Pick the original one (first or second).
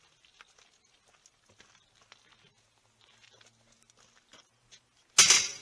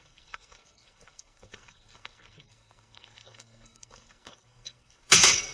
first